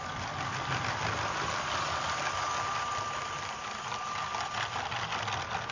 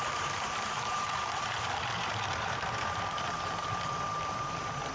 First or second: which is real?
first